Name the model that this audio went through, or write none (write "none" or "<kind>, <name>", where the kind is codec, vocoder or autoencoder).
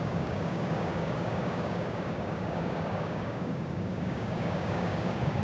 codec, DAC